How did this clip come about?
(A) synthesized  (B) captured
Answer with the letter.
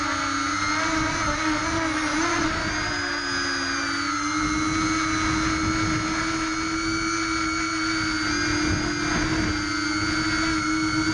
B